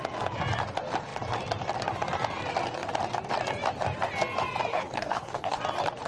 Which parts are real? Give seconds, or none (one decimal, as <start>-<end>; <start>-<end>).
0.0-4.7; 5.6-6.1